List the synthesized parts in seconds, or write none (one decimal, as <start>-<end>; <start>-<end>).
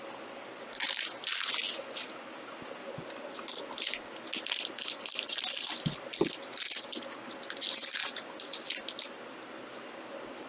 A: none